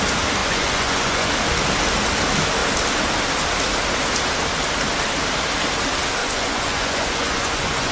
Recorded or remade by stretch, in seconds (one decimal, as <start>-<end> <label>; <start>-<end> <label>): 0.0-0.4 recorded; 0.4-1.3 remade; 1.3-6.2 recorded; 6.2-7.9 remade